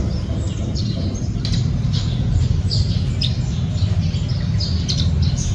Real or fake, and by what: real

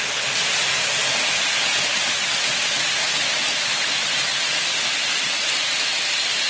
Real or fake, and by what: real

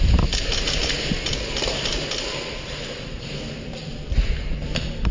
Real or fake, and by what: real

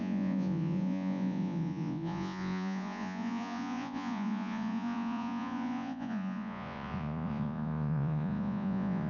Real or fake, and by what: fake, vocoder, Vocos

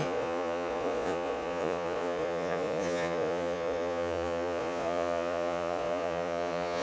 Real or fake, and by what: fake, vocoder, Vocos